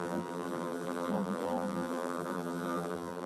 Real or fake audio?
fake